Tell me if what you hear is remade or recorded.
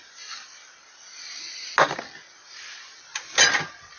recorded